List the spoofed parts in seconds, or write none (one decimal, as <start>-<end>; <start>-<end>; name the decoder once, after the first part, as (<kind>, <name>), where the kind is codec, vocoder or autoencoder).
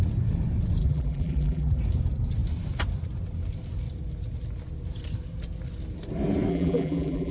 0.8-1.8 (vocoder, BigVGAN v2); 6.5-7.3